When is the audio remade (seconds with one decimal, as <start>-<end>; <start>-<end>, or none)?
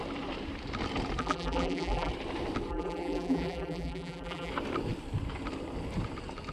1.2-2.1; 2.7-4.5